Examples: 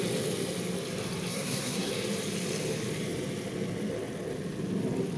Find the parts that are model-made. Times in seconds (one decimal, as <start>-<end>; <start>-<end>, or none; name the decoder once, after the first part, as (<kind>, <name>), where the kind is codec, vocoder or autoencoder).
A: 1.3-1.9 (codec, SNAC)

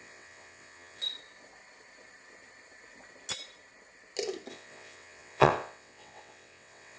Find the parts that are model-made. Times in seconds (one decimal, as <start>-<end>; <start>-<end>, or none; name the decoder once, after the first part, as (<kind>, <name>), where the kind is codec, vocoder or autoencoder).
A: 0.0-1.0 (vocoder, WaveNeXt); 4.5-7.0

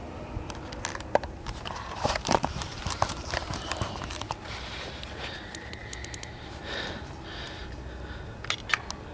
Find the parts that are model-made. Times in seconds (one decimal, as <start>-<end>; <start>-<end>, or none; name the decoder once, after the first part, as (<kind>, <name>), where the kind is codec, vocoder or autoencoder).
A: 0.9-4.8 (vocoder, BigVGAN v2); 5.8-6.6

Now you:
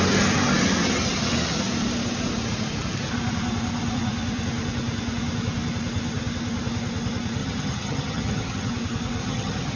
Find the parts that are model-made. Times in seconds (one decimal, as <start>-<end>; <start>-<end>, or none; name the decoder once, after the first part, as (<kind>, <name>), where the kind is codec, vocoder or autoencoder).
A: 7.4-8.7 (vocoder, HiFi-GAN); 9.2-9.8

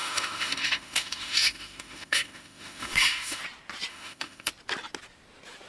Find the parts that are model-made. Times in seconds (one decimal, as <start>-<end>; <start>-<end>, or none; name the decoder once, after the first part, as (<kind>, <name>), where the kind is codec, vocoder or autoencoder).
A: 0.0-3.4 (autoencoder, DAC-VAE); 3.9-4.5

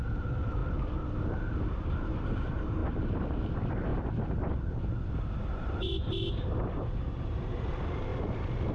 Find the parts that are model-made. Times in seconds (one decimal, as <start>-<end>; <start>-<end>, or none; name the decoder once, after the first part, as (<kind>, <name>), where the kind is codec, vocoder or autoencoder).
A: 0.0-0.6 (vocoder, BigVGAN v2); 1.6-3.9; 5.5-8.1

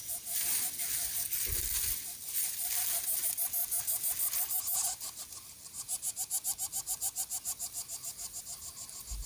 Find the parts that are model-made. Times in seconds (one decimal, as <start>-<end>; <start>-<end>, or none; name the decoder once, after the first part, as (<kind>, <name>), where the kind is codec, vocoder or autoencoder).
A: none

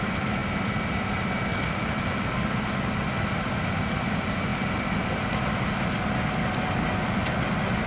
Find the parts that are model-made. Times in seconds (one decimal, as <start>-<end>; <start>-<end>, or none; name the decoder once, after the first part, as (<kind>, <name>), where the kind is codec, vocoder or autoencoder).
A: 1.5-2.0 (codec, DAC)